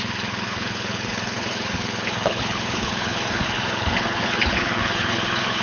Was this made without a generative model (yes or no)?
no